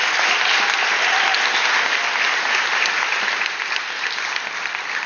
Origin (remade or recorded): recorded